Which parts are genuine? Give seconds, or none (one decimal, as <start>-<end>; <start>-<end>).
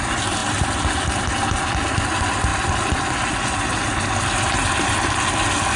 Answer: 0.0-0.4; 1.1-5.8